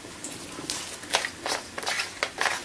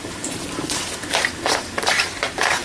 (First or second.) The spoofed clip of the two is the second